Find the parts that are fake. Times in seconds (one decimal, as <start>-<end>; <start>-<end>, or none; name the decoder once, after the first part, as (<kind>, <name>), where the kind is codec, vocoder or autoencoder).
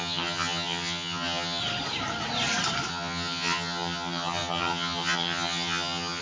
0.0-1.6 (vocoder, HiFi-GAN); 2.9-6.2